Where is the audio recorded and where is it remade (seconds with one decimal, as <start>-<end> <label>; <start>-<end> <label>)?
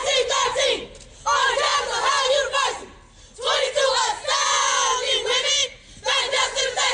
0.0-6.9 recorded